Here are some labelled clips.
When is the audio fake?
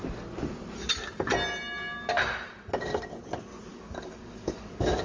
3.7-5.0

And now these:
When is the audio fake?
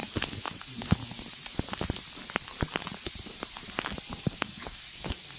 0.5-1.0; 4.2-5.4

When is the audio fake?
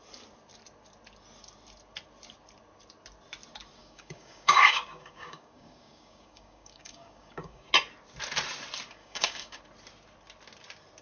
3.8-7.7; 9.0-9.6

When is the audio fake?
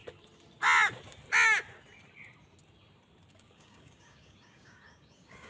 3.3-5.5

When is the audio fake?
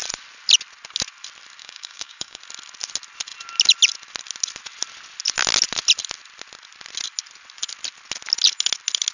1.6-2.4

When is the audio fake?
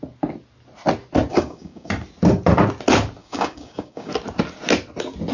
1.3-1.9; 3.2-4.1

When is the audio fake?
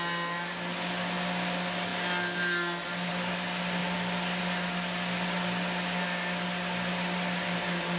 none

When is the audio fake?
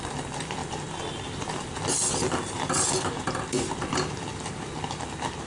none